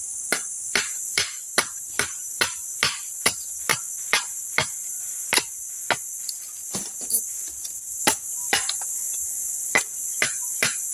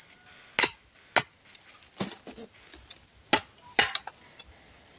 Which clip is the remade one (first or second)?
first